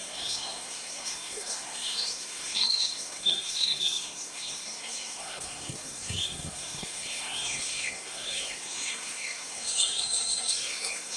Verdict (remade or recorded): remade